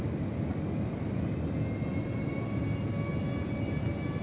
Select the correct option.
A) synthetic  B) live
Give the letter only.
B